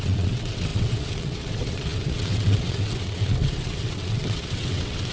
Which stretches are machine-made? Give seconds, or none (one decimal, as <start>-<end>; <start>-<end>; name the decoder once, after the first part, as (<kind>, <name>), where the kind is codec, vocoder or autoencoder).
0.0-5.1 (vocoder, WaveNeXt)